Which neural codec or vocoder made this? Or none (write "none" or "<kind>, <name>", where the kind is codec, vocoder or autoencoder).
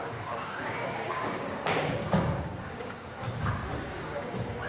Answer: codec, DAC